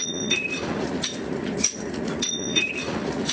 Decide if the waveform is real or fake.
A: fake